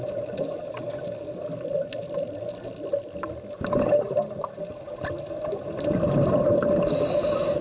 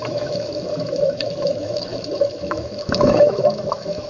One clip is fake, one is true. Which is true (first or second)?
first